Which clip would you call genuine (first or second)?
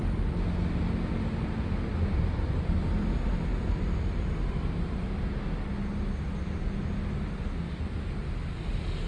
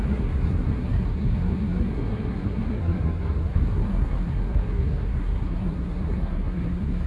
first